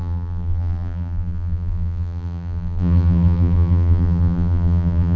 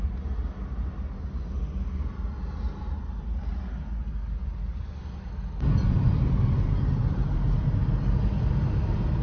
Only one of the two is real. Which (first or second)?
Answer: second